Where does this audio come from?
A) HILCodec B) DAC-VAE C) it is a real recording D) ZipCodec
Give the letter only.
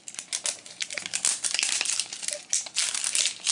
C